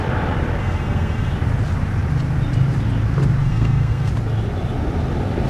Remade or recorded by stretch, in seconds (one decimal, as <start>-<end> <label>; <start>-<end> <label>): 0.0-0.6 recorded; 0.6-1.3 remade; 1.3-3.4 recorded; 3.4-4.1 remade; 4.1-5.5 recorded